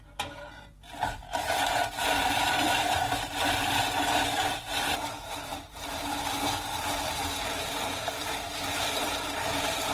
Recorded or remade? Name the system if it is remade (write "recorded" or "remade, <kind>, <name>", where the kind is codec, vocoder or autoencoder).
remade, vocoder, BigVGAN v2